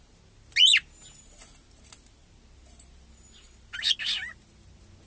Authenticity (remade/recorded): recorded